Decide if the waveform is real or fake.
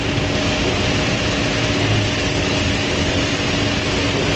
real